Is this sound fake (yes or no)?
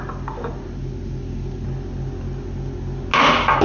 no